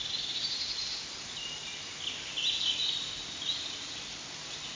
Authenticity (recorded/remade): recorded